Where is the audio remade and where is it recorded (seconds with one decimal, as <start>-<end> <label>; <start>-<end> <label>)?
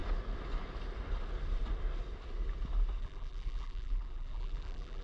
0.0-3.0 recorded; 3.0-5.0 remade